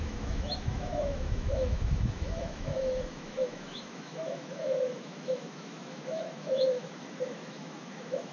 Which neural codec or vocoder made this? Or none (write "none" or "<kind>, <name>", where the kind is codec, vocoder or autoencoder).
autoencoder, DAC-VAE